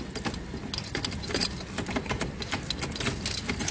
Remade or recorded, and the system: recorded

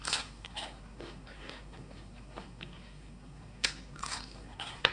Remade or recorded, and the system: remade, codec, SNAC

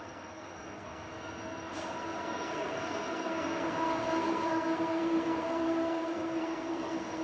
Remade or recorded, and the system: remade, codec, SNAC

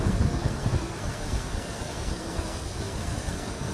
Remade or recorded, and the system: remade, codec, SNAC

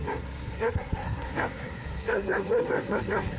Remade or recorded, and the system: remade, codec, SNAC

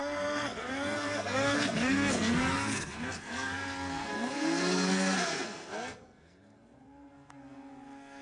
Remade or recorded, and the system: remade, codec, SNAC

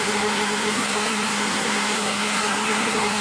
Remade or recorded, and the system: remade, codec, SNAC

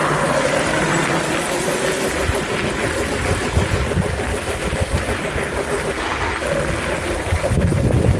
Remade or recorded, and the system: recorded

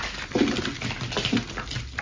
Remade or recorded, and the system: recorded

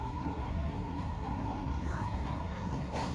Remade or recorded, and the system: remade, codec, SNAC